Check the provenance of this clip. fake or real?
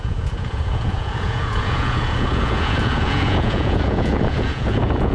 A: fake